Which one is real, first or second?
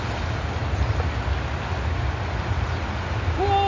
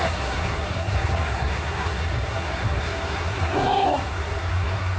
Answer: first